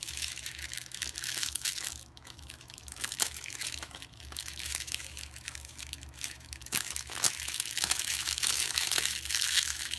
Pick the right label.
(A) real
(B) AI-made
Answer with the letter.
B